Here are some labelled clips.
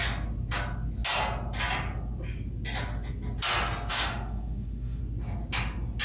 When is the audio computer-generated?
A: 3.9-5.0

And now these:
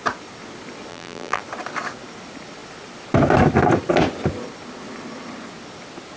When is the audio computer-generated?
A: 0.9-1.4

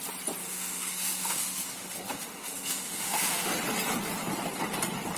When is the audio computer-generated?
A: 0.4-3.5

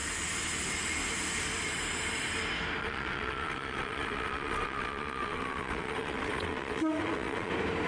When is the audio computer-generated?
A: 2.8-7.5